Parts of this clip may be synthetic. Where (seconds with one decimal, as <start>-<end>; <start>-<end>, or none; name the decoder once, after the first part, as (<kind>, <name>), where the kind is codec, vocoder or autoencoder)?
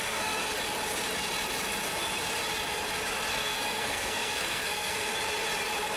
0.0-0.4 (codec, SNAC); 3.3-5.1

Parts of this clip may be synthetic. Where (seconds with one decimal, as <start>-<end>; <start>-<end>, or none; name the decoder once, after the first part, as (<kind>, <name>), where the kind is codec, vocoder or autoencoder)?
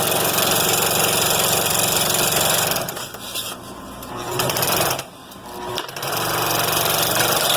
none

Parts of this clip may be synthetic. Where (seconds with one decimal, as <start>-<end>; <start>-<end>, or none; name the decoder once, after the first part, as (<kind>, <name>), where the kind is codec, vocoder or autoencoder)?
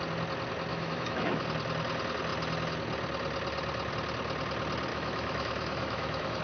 0.7-1.4 (autoencoder, DAC-VAE); 4.9-6.4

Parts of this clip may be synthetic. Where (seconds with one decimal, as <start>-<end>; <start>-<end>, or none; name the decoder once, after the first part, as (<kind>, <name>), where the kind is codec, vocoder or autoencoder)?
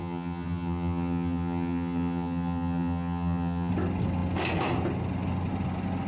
0.0-3.7 (vocoder, HiFi-GAN)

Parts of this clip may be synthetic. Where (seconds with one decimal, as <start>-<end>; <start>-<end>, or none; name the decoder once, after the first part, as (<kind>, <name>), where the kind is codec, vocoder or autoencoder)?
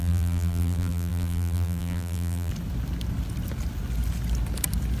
0.0-2.5 (vocoder, BigVGAN v2)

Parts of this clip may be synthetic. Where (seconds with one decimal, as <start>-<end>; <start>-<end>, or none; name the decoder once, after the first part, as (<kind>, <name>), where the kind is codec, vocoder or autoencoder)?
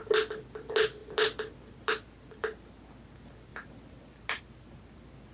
none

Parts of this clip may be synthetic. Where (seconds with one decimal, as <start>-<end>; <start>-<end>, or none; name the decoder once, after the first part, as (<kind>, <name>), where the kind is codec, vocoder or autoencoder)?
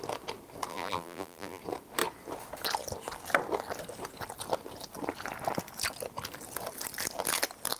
0.7-1.6 (vocoder, BigVGAN v2)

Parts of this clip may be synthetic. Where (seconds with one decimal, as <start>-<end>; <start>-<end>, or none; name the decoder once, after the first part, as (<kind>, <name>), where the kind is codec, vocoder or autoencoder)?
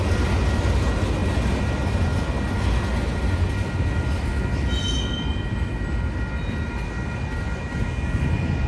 none